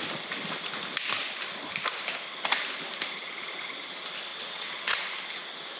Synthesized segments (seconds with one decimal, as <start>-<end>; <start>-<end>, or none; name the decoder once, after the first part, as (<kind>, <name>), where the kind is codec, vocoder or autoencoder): 4.3-5.0 (vocoder, WaveNeXt)